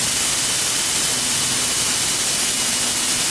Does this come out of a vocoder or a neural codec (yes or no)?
no